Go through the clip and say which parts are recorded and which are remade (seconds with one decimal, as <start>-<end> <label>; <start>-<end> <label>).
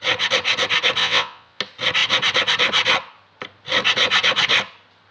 0.0-1.0 recorded; 1.0-1.6 remade; 1.6-5.1 recorded